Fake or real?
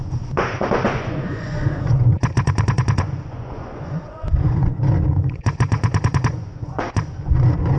fake